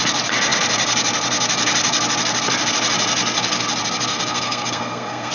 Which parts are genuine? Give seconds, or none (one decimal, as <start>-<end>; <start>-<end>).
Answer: 0.0-4.1